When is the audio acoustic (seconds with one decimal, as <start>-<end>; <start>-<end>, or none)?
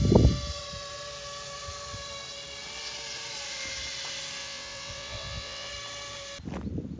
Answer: 0.0-4.4; 5.7-7.0